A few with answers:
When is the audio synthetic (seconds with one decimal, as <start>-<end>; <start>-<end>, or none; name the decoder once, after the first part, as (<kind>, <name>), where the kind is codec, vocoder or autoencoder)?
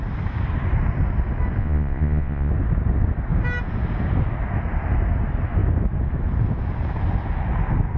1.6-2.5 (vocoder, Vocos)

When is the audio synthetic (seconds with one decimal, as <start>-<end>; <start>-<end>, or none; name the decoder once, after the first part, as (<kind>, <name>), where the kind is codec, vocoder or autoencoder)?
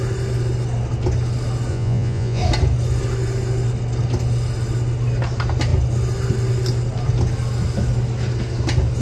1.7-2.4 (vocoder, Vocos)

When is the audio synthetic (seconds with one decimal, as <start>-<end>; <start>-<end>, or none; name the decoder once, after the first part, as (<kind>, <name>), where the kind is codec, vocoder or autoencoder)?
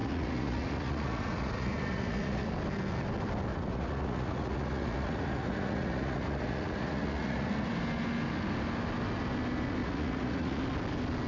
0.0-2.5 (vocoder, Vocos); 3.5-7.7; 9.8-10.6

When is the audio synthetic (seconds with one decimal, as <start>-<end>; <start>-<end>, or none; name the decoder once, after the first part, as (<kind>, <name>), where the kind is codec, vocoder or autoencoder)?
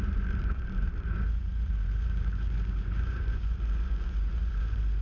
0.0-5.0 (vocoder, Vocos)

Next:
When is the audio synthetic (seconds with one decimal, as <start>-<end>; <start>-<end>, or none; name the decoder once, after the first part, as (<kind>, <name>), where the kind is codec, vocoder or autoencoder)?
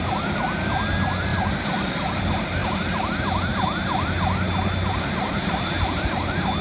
none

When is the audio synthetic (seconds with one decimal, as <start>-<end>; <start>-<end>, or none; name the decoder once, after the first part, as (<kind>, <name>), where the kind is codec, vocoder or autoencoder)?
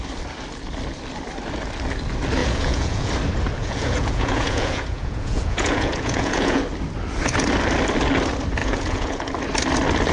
2.4-3.1 (vocoder, Vocos); 3.6-6.6; 8.6-9.3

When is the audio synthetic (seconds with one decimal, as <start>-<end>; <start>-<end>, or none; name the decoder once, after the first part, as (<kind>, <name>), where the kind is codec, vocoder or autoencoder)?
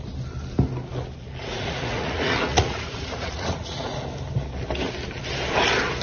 1.4-4.0 (vocoder, Vocos)